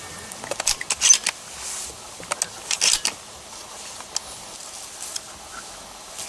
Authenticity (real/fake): real